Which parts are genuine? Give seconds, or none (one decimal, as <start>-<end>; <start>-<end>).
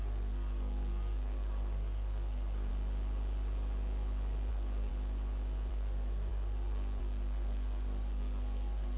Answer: 2.7-4.5; 4.9-5.7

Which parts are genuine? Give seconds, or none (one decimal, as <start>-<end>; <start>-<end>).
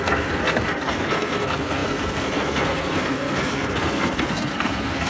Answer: none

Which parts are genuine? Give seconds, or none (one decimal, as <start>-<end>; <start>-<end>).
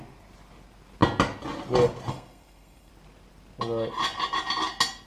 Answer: 0.0-2.1; 2.9-5.1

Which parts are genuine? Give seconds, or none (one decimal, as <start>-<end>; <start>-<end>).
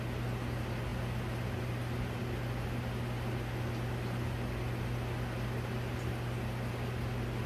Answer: 0.0-7.5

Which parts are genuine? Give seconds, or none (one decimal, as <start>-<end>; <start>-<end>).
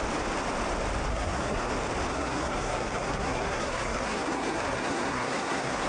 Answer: 0.0-1.1; 1.7-2.1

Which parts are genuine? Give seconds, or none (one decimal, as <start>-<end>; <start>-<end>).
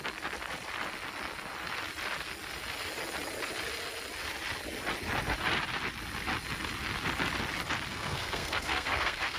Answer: 0.0-7.9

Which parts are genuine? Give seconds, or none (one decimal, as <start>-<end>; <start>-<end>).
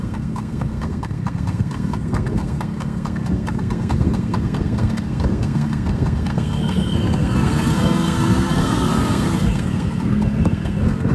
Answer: none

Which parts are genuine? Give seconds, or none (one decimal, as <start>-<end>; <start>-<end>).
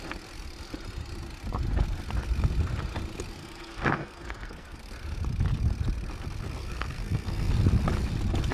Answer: 0.0-3.4; 4.8-6.6; 7.5-8.5